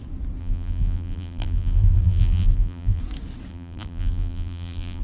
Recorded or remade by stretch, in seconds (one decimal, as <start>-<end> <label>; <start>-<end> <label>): 0.0-0.4 recorded; 0.4-3.0 remade; 3.0-3.5 recorded; 3.5-5.0 remade